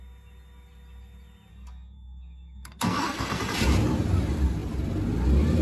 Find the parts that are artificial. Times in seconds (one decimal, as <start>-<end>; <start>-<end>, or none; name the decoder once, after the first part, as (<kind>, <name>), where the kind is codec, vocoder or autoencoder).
1.5-3.4 (codec, SNAC)